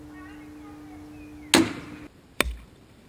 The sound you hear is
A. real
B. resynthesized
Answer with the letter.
A